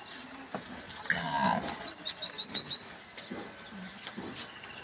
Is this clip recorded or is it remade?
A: recorded